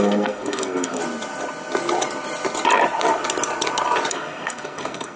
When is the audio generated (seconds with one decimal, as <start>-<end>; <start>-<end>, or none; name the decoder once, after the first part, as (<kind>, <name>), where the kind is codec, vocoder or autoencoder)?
0.0-1.0 (codec, SNAC); 4.1-5.2